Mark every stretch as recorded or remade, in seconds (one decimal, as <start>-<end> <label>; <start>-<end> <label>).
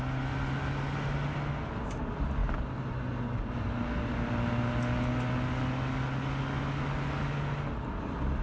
0.0-8.4 recorded